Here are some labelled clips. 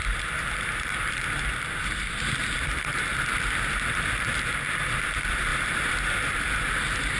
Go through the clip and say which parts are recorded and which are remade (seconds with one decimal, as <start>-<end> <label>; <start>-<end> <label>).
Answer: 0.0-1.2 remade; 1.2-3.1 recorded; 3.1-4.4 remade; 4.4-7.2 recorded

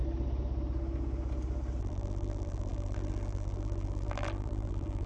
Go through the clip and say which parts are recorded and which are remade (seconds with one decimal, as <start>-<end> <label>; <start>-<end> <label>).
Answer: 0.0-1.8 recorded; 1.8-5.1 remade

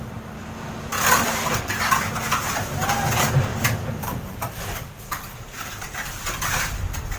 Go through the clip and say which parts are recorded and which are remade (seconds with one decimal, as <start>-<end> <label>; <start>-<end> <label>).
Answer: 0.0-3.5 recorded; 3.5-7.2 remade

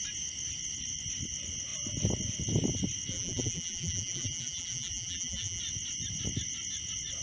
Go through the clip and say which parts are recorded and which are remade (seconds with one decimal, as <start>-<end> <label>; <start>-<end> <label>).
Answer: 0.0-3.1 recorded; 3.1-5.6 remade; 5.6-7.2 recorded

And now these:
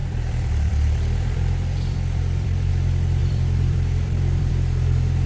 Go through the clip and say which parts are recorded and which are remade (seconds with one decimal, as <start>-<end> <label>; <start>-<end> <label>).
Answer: 0.0-2.7 remade; 2.7-3.2 recorded; 3.2-4.5 remade; 4.5-5.3 recorded

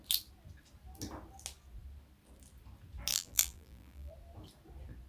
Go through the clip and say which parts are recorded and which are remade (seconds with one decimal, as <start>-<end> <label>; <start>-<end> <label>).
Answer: 0.0-3.1 recorded; 3.1-4.1 remade; 4.1-5.1 recorded